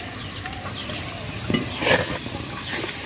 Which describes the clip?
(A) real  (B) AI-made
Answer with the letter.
A